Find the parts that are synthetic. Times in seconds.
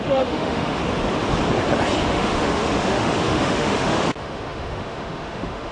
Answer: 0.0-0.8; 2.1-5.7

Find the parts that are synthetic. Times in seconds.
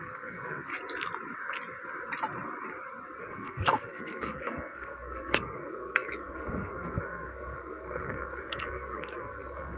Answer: 0.0-0.7; 3.2-9.8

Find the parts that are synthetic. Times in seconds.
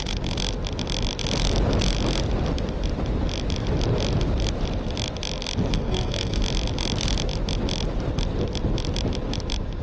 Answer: 5.7-6.4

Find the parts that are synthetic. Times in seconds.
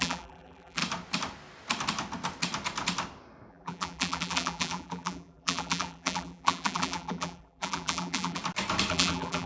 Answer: 0.0-0.8; 3.5-8.4; 8.9-9.5